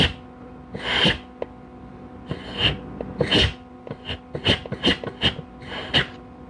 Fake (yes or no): no